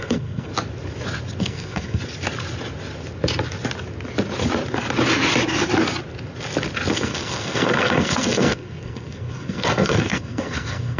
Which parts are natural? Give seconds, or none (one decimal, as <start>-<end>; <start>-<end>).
0.5-1.4; 2.0-6.9